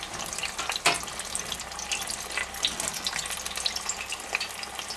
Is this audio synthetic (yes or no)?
no